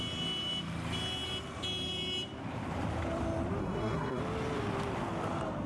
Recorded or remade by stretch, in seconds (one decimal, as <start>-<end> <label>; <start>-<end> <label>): 0.0-3.6 recorded; 3.6-4.2 remade; 4.2-5.7 recorded